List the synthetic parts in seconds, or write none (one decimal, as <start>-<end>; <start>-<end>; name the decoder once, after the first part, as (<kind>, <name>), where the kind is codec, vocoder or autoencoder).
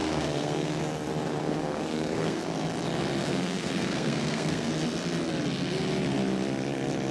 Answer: 0.0-0.8 (codec, SNAC); 1.4-2.5; 3.2-4.7